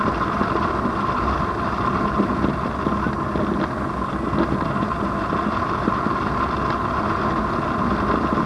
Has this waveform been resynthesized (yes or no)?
no